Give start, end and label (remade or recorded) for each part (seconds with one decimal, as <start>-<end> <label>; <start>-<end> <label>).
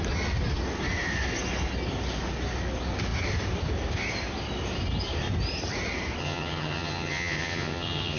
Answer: 0.0-6.2 recorded; 6.2-8.2 remade